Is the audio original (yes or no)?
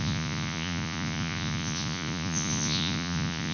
no